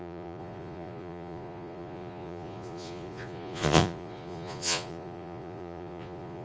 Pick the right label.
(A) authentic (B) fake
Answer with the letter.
B